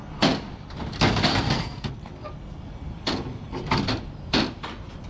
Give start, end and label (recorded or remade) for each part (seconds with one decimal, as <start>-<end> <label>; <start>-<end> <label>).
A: 0.0-1.3 recorded; 1.3-1.9 remade; 1.9-5.1 recorded